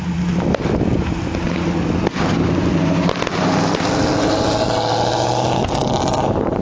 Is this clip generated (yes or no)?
no